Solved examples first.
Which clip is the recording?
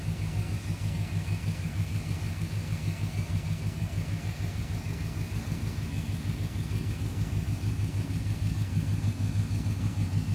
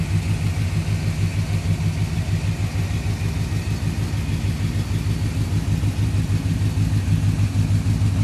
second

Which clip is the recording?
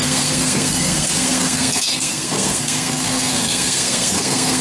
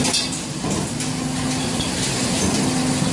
second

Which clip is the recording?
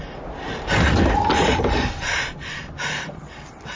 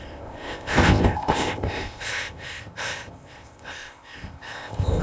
first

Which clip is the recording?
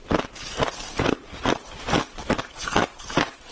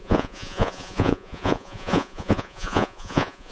first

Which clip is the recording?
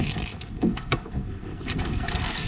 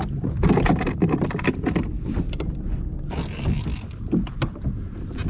second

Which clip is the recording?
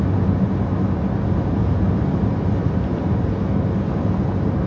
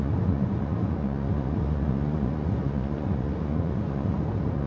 first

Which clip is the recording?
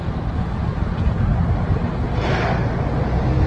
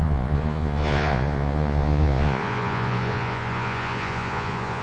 first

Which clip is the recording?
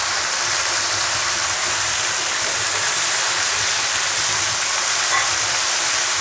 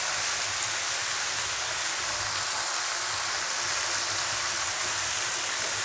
second